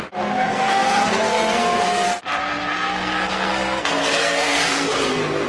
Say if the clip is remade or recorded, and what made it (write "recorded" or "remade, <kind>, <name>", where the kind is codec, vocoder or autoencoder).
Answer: remade, codec, SNAC